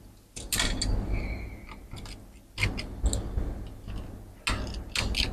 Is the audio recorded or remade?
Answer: recorded